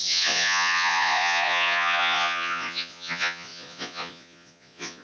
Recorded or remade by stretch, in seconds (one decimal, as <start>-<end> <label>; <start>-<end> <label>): 0.0-5.0 remade